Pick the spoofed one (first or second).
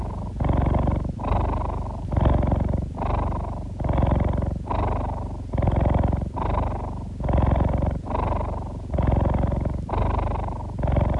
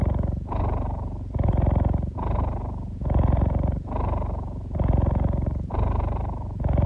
second